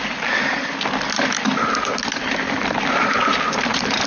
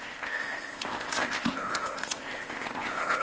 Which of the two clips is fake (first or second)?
second